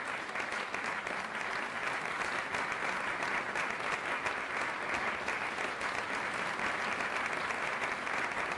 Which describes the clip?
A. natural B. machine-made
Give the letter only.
A